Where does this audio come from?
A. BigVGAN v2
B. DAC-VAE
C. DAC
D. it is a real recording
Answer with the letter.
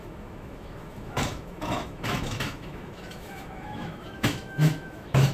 B